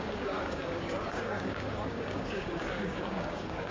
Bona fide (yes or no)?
no